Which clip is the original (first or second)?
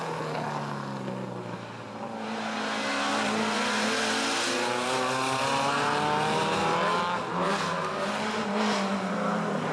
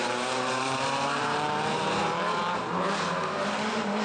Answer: first